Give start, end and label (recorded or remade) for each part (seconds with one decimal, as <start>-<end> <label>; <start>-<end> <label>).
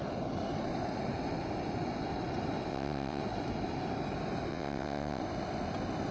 0.0-2.7 recorded; 2.7-3.2 remade; 3.2-4.5 recorded; 4.5-5.2 remade; 5.2-6.1 recorded